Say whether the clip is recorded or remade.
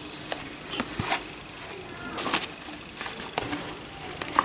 recorded